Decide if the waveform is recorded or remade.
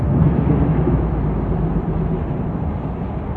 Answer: recorded